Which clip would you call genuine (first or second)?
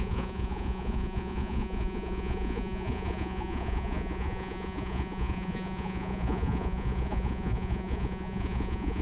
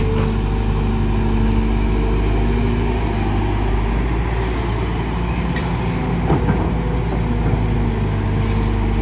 second